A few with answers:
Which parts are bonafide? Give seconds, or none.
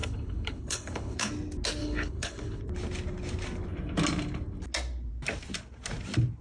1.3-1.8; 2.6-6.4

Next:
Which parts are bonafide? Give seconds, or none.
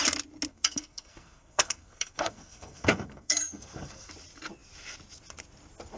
0.0-0.5; 4.1-6.0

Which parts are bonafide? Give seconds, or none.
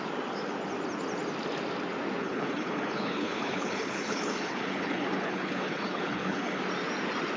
0.0-2.2; 6.6-7.4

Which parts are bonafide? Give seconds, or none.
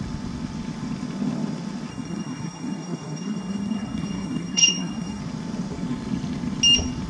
0.0-1.9; 5.2-7.1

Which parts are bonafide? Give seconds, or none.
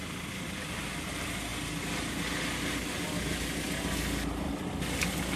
0.0-5.4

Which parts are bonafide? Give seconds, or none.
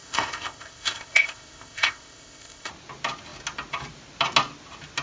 2.7-5.0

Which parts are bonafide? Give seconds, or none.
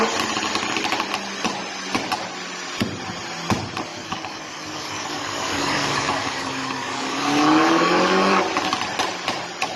0.0-3.9; 8.4-9.8